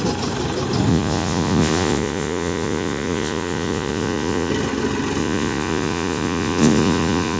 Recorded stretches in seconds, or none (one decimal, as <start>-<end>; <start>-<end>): 0.0-0.9; 4.5-5.2